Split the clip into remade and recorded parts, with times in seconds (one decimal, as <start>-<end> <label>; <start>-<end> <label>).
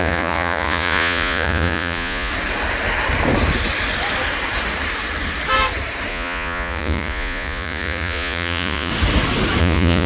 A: 0.0-2.3 remade; 2.3-6.1 recorded; 6.1-8.9 remade; 8.9-9.6 recorded; 9.6-10.1 remade